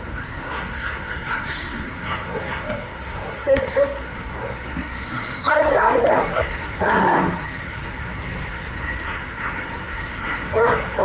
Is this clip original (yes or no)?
no